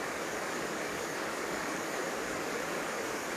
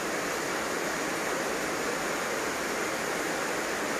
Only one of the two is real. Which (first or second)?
second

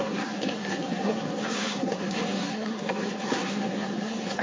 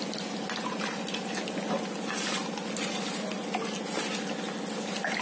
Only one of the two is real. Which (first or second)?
second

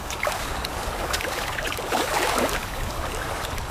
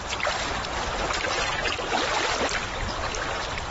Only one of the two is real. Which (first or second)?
second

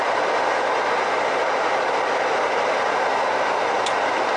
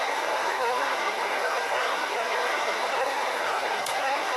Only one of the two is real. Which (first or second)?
first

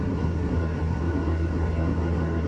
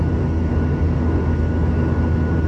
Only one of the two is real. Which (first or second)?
second